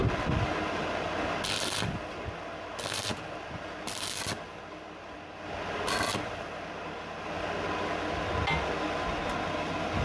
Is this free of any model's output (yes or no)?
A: yes